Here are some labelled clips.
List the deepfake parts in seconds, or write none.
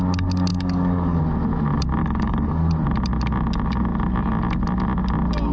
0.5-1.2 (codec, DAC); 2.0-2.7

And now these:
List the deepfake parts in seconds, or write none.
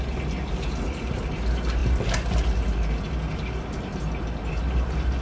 none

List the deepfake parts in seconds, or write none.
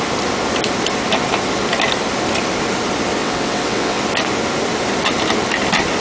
3.2-4.0 (vocoder, WaveNeXt)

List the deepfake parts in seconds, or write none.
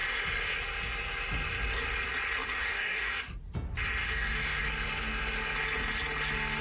2.5-3.1 (codec, DAC); 4.0-4.6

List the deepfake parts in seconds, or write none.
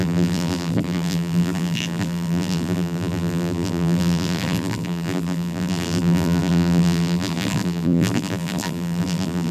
0.0-9.5 (vocoder, BigVGAN v2)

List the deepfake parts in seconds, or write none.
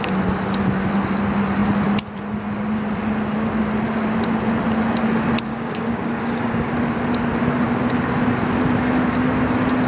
5.5-6.7 (codec, DAC)